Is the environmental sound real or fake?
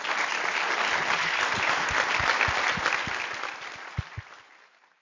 real